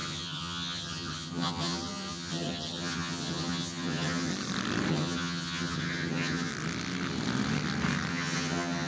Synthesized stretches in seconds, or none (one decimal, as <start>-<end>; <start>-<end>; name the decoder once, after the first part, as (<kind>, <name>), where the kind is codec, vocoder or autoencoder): 0.0-4.3 (vocoder, HiFi-GAN); 4.9-6.5; 8.1-8.9